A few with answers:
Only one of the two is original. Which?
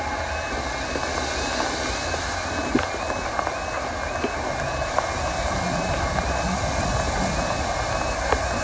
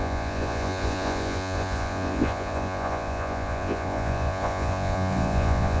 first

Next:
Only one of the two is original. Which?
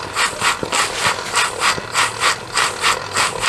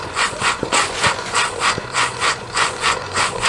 first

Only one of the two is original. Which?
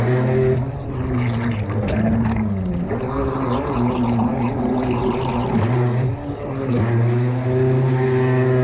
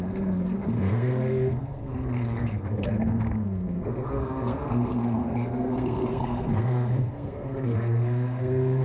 first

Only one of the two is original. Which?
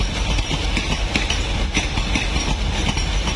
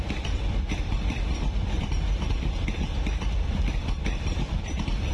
first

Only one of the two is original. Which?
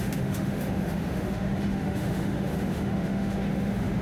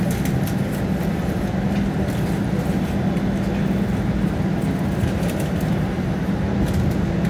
second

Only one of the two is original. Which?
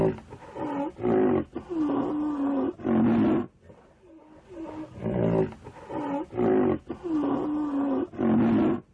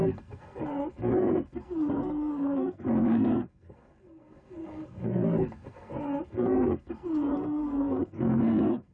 first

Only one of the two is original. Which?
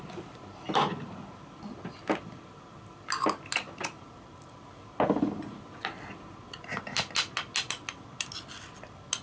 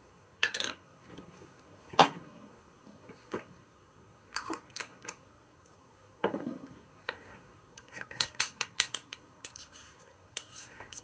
first